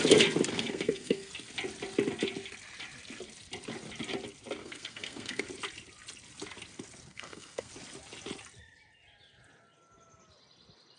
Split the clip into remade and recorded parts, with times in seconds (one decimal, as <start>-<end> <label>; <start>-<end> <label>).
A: 0.0-0.5 recorded; 0.5-1.3 remade; 1.3-4.6 recorded; 4.6-5.4 remade; 5.4-7.1 recorded; 7.1-7.7 remade; 7.7-11.0 recorded